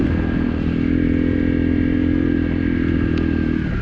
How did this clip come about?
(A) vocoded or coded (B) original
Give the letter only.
B